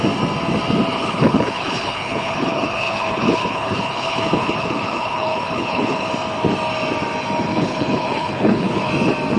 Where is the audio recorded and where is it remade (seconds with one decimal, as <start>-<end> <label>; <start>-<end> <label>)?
0.0-0.9 recorded; 0.9-6.1 remade; 6.1-7.5 recorded; 7.5-8.9 remade; 8.9-9.4 recorded